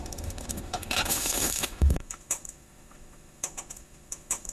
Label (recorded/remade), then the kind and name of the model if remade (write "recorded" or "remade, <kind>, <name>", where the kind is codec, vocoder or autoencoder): remade, autoencoder, DAC-VAE